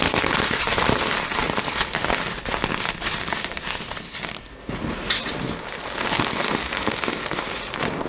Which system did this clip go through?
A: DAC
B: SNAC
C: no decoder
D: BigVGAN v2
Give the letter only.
C